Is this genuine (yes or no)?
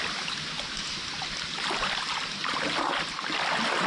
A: yes